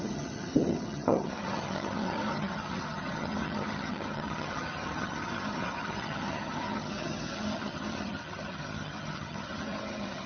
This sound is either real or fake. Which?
fake